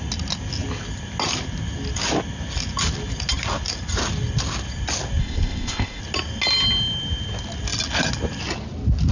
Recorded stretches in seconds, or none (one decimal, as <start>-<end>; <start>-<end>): 0.0-5.2; 6.0-9.1

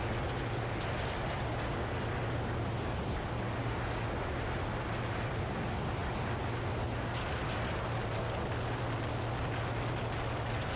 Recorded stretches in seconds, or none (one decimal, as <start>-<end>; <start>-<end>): 0.0-10.8